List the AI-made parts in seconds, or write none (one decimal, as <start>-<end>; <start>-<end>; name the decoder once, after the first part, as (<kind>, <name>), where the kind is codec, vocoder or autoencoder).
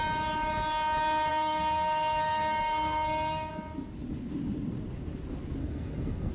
1.3-3.5 (codec, SNAC); 5.6-6.3